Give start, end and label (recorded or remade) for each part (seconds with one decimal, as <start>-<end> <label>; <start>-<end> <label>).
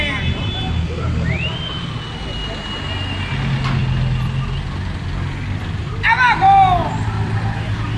0.0-8.0 recorded